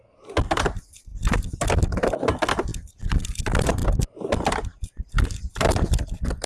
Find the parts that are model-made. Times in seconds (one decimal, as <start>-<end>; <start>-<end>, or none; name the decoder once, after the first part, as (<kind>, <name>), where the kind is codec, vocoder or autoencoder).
2.7-3.4 (vocoder, BigVGAN v2)